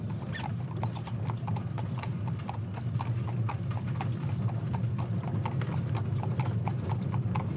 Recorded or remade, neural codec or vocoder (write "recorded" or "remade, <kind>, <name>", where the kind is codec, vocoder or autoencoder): recorded